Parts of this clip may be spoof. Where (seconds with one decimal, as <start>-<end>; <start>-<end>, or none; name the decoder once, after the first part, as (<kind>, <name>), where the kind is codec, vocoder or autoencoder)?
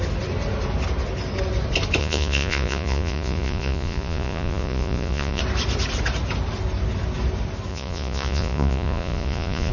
2.0-5.4 (vocoder, Vocos); 7.7-9.7